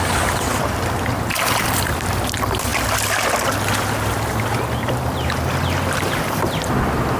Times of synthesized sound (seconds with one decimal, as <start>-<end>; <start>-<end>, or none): none